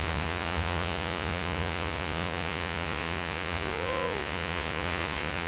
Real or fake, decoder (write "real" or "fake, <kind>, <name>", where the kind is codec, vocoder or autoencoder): fake, vocoder, Vocos